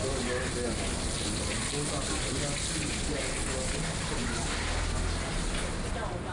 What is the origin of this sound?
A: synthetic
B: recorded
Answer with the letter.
B